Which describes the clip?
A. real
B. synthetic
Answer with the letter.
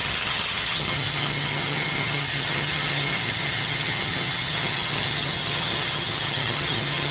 B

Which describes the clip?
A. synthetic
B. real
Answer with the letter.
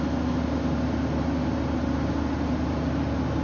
B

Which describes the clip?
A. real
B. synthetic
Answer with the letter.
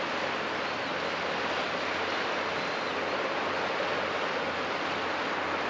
A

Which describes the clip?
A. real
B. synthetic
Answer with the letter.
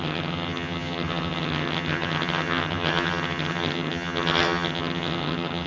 B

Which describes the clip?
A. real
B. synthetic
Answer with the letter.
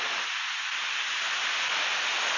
A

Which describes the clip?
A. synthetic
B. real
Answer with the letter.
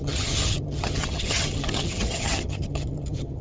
A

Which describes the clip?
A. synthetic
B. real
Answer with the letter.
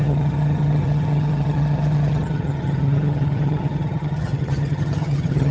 A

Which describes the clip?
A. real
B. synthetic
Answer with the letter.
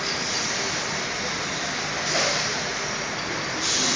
A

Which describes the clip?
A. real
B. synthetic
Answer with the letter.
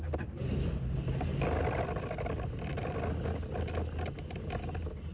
A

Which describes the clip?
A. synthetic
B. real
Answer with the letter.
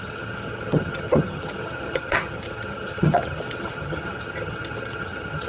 A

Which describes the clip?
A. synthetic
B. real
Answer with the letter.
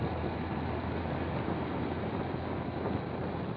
B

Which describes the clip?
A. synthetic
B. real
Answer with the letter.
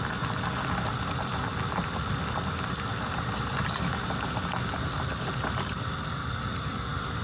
B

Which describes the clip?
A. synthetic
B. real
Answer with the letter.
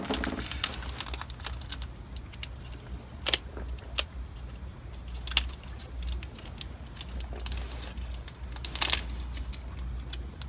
B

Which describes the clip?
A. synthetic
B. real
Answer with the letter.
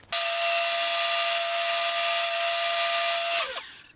B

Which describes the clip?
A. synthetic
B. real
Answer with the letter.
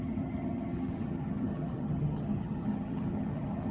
A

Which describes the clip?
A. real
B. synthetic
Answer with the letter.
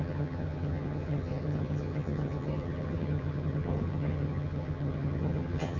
B